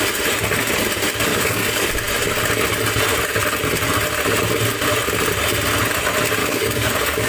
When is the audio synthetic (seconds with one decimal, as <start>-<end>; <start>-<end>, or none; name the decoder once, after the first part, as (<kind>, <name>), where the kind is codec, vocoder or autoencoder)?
1.3-1.9 (codec, DAC); 6.4-7.3